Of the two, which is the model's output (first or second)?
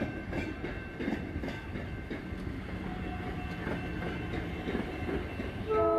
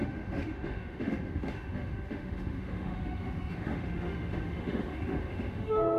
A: second